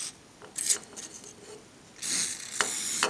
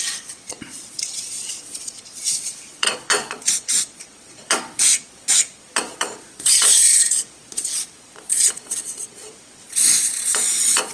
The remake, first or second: second